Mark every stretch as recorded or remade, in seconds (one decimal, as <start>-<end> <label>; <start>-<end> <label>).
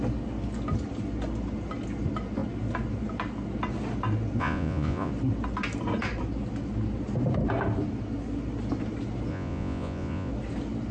0.0-4.4 recorded; 4.4-5.1 remade; 5.1-9.3 recorded; 9.3-10.3 remade; 10.3-10.9 recorded